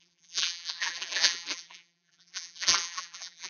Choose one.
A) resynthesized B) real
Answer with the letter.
A